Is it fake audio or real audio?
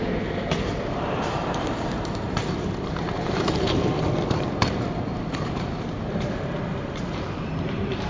fake